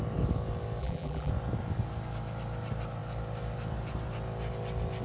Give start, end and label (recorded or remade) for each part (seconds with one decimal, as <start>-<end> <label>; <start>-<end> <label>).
0.0-0.8 recorded; 0.8-1.3 remade; 1.3-5.0 recorded